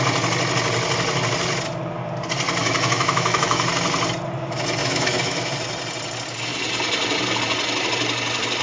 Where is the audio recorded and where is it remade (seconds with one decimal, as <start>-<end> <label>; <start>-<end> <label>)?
0.0-2.6 recorded; 2.6-3.7 remade; 3.7-4.8 recorded; 4.8-5.5 remade; 5.5-8.6 recorded